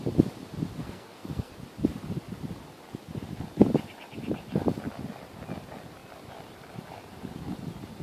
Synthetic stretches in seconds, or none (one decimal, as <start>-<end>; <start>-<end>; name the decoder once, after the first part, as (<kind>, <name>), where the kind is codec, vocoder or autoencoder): 0.8-1.5 (codec, SNAC)